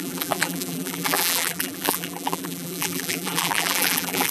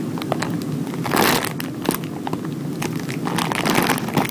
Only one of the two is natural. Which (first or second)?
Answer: second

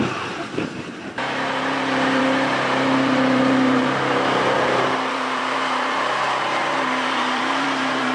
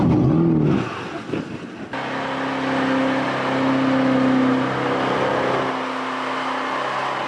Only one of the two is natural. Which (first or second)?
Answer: second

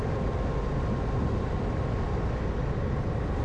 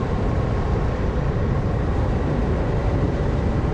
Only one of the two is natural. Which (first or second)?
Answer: first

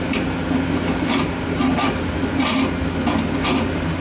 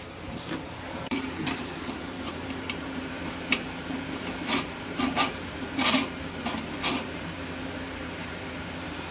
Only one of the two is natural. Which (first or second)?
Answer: first